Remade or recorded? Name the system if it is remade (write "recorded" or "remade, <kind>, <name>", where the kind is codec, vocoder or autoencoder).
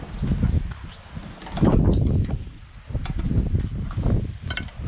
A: recorded